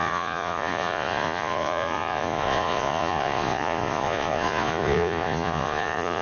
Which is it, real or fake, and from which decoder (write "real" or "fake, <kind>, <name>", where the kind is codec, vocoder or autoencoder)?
fake, vocoder, Vocos